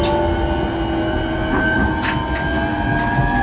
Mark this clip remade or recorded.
recorded